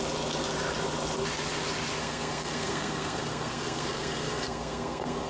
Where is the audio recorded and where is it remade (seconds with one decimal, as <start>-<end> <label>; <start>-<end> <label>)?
0.0-2.0 recorded; 2.0-5.3 remade